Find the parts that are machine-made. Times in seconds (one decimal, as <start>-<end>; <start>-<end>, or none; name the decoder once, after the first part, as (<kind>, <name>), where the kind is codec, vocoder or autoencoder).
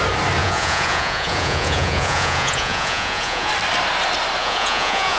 0.4-3.5 (vocoder, Vocos); 4.4-5.2